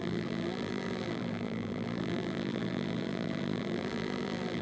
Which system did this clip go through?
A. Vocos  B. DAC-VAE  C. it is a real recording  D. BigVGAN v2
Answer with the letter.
D